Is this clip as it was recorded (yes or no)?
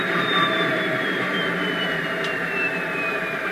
no